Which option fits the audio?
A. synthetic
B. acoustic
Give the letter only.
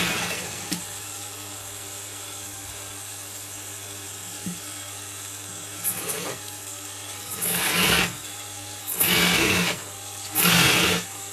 A